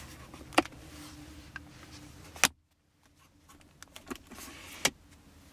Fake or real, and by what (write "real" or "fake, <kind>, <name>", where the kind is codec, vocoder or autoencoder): real